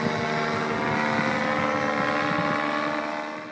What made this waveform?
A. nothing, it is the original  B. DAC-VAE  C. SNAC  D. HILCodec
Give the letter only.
A